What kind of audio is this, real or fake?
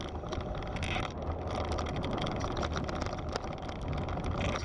real